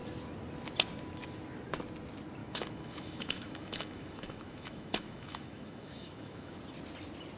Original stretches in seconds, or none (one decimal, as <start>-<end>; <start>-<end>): 0.0-2.4; 6.6-7.4